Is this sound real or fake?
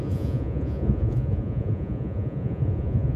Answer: fake